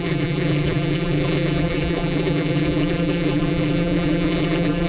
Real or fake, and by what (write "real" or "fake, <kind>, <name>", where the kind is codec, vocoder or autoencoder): fake, vocoder, BigVGAN v2